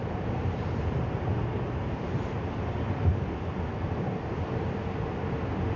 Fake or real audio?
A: fake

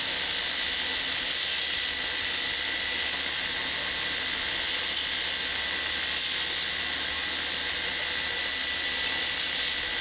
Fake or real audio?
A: real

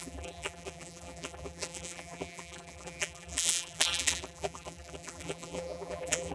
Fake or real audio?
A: fake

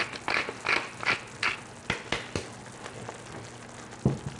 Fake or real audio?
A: real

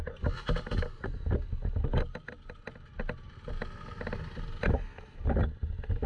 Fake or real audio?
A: real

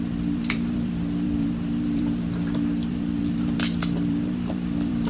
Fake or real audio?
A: fake